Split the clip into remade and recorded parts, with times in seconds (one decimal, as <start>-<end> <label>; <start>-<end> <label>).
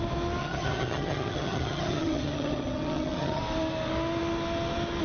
0.0-0.4 recorded; 0.4-3.4 remade; 3.4-5.0 recorded